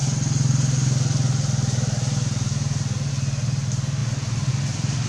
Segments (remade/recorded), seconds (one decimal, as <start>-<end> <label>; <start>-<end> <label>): 0.0-5.1 recorded